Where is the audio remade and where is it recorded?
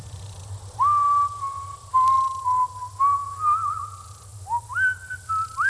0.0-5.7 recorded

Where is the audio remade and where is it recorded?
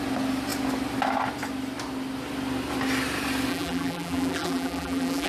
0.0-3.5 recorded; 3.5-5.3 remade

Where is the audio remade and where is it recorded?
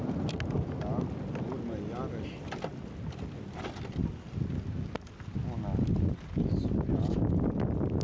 0.0-8.0 recorded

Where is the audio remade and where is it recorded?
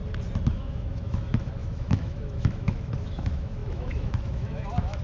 0.0-0.5 recorded; 0.5-5.0 remade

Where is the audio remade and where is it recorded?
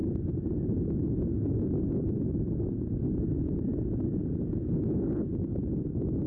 0.0-6.3 recorded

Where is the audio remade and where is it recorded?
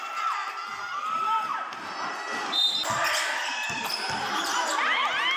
0.0-5.4 recorded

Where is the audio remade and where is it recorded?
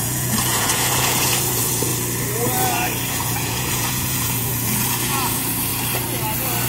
0.0-1.9 remade; 1.9-3.1 recorded; 3.1-5.7 remade; 5.7-6.7 recorded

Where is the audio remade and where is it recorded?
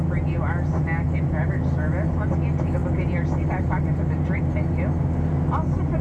0.0-6.0 recorded